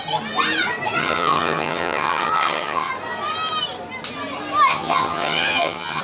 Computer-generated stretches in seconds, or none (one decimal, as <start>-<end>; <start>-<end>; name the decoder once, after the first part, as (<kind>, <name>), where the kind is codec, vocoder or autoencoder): 1.0-2.9 (vocoder, HiFi-GAN); 4.7-6.0